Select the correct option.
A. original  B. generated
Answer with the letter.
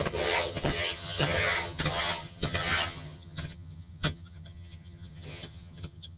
B